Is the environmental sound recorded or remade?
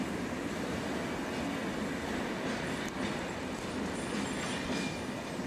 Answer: recorded